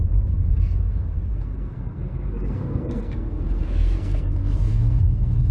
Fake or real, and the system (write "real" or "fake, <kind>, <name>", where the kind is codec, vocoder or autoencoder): fake, codec, SNAC